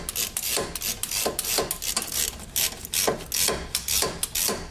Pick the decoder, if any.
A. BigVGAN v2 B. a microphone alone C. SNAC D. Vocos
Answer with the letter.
B